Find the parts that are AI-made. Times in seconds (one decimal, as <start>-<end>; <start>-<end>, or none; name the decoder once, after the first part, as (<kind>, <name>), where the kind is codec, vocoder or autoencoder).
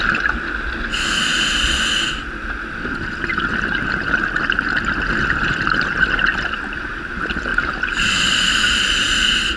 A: none